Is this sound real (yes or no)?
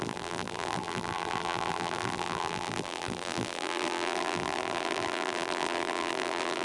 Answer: no